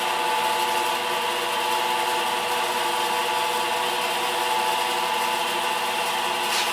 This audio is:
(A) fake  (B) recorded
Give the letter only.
B